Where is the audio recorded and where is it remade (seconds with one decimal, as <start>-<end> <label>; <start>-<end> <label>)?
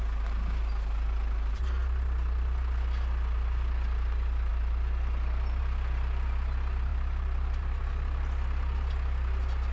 0.0-6.9 recorded; 6.9-7.8 remade; 7.8-9.7 recorded